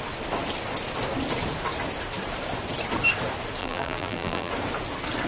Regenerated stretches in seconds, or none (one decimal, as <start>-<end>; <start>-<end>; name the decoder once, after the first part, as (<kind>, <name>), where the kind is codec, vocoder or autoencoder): 3.6-4.5 (vocoder, BigVGAN v2)